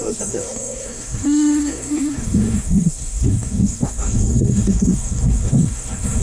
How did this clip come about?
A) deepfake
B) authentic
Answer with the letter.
A